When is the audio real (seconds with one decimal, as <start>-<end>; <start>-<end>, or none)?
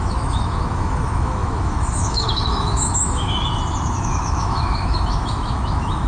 none